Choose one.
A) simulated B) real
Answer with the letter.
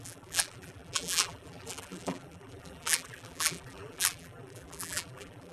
A